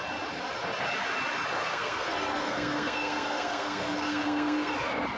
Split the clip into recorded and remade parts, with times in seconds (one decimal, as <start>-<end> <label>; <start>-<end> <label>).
0.0-1.6 recorded; 1.6-4.7 remade; 4.7-5.2 recorded